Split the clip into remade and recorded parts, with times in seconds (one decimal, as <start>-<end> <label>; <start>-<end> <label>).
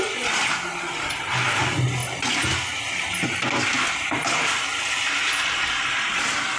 0.0-6.6 recorded